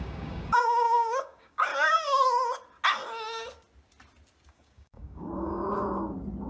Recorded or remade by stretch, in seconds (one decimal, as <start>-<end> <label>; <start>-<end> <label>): 0.0-1.7 remade; 1.7-4.5 recorded; 4.5-5.5 remade; 5.5-6.5 recorded